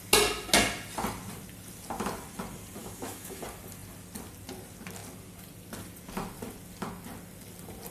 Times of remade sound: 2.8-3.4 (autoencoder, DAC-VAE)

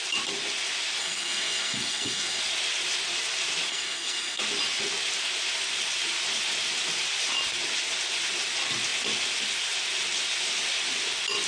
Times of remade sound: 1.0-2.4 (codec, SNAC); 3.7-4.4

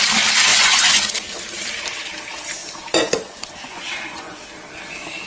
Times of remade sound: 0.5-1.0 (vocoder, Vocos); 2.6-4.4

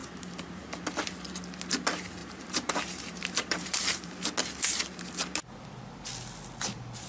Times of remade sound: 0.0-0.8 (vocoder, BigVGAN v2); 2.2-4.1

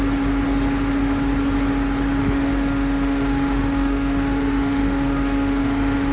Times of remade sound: 2.2-6.1 (autoencoder, DAC-VAE)